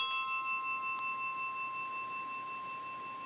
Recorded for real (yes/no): yes